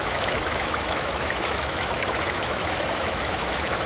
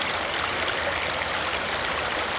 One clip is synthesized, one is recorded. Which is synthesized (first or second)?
first